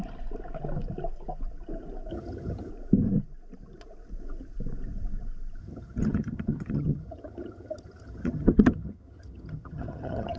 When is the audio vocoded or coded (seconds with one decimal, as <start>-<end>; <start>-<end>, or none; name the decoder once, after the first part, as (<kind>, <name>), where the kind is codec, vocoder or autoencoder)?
2.1-2.7 (vocoder, HiFi-GAN); 5.6-10.4